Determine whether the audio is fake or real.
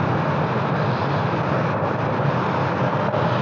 real